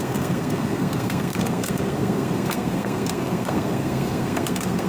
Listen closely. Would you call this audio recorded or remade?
remade